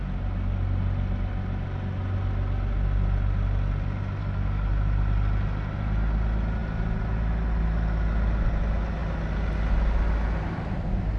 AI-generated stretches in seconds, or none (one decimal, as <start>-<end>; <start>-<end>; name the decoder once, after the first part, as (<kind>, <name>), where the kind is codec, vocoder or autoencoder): 4.2-4.7 (codec, DAC)

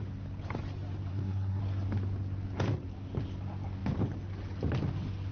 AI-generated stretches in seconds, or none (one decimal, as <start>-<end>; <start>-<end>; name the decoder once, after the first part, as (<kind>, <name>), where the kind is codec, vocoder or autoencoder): 1.1-1.6 (codec, SNAC)

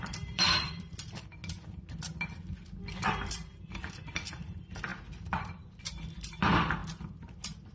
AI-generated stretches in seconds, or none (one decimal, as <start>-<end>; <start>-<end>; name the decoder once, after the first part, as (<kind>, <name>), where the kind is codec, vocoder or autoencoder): 0.0-1.4 (vocoder, BigVGAN v2); 2.9-6.8

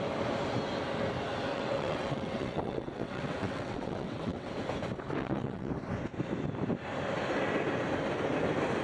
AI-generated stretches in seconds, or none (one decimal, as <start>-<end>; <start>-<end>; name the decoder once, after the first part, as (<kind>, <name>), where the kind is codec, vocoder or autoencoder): 1.5-4.5 (vocoder, WaveNeXt); 5.2-5.7

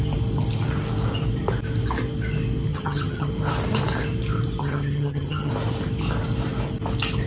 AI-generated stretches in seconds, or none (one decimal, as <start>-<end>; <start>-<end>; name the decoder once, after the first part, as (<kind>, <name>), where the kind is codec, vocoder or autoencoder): 2.7-3.3 (vocoder, HiFi-GAN); 4.6-5.5

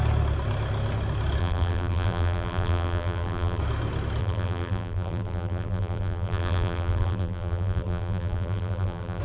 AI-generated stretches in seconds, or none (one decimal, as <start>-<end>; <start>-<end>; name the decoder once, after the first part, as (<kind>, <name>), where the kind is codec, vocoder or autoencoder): 1.4-3.6 (vocoder, BigVGAN v2); 4.2-9.2

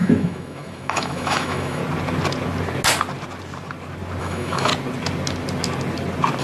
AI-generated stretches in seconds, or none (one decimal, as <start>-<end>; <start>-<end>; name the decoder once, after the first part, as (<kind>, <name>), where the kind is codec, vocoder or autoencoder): 0.0-1.8 (autoencoder, DAC-VAE); 4.2-4.7

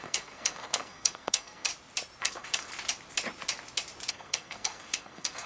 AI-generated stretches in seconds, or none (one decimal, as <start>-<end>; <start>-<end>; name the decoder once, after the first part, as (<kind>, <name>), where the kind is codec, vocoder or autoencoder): 0.0-1.7 (codec, SNAC); 2.2-2.7; 4.1-5.5